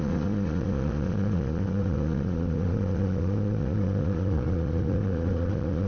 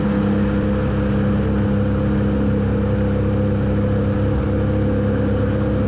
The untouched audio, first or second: second